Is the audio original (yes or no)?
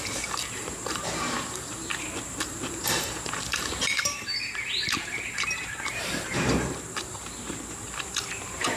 no